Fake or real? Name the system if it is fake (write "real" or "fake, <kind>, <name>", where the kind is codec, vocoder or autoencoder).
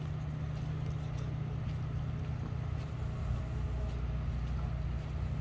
real